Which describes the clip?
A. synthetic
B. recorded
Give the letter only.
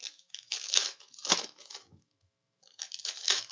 A